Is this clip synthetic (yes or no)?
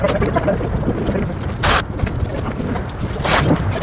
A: no